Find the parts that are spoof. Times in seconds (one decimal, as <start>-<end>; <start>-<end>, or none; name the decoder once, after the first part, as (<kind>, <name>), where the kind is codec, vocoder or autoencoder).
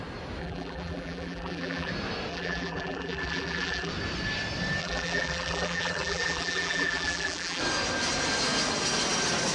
0.4-1.9 (vocoder, BigVGAN v2); 2.3-3.9; 4.8-7.6